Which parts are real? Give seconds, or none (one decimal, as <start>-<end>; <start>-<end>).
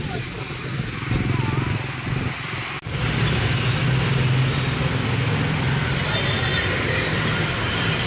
0.0-6.5